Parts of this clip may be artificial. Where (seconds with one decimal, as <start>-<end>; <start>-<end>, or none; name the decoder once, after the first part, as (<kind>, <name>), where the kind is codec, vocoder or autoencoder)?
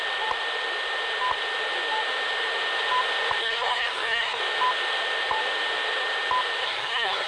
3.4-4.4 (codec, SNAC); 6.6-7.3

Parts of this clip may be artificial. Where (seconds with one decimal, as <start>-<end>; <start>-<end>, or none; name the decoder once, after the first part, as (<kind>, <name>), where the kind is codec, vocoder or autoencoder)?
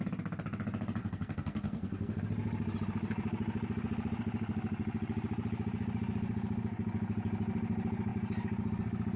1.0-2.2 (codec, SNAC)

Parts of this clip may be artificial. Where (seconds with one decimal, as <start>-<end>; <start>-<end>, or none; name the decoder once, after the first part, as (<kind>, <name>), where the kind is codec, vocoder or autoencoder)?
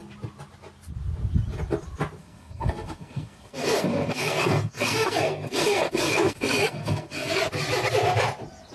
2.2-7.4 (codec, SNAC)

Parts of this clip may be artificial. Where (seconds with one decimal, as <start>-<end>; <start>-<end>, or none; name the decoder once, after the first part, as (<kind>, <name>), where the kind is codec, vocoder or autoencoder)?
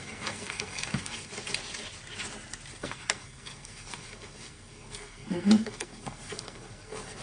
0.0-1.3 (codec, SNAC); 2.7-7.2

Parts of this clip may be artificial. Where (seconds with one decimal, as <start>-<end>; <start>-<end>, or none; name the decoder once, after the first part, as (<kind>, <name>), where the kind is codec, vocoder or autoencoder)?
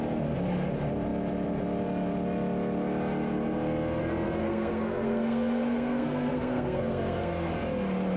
4.4-7.5 (codec, SNAC)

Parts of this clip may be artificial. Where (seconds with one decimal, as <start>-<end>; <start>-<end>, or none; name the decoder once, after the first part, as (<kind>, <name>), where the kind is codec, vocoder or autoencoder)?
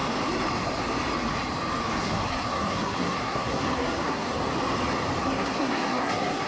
2.0-4.4 (codec, SNAC); 5.2-6.5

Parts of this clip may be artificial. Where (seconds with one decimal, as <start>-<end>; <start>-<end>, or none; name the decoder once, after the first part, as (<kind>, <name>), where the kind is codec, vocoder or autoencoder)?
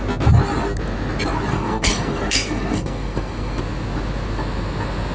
1.5-3.6 (codec, SNAC)